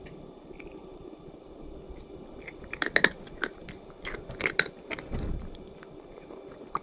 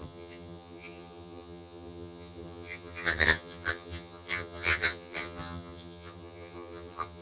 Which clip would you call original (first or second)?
first